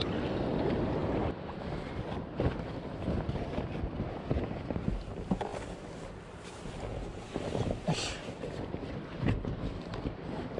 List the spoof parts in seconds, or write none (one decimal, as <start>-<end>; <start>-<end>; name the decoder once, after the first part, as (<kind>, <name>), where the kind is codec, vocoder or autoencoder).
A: 6.9-10.6 (vocoder, BigVGAN v2)